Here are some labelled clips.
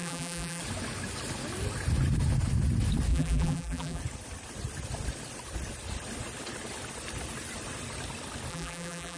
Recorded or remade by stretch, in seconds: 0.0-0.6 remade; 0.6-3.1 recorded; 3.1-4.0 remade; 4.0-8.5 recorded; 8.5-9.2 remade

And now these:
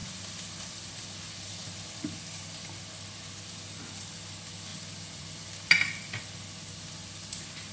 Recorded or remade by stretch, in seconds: 0.0-4.7 recorded; 4.7-6.2 remade; 6.2-7.7 recorded

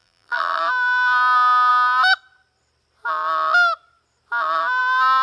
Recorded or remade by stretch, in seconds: 0.0-0.6 remade; 0.6-5.2 recorded

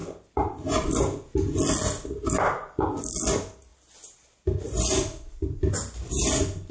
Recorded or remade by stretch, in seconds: 0.0-6.7 recorded

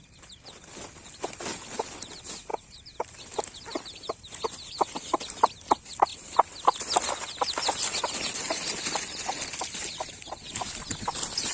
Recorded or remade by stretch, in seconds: 0.0-2.5 recorded; 2.5-5.1 remade; 5.1-6.1 recorded; 6.1-7.0 remade; 7.0-11.5 recorded

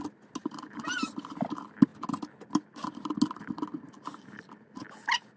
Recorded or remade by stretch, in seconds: 0.0-0.4 recorded; 0.4-1.1 remade; 1.1-3.7 recorded; 3.7-5.4 remade